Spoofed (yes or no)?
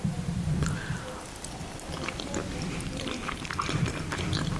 yes